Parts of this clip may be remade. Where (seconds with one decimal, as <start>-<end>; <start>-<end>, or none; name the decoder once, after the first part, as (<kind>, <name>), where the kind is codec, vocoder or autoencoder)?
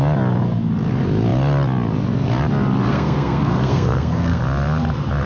2.9-4.4 (codec, SNAC)